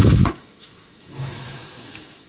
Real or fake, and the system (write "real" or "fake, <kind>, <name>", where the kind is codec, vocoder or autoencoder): fake, autoencoder, DAC-VAE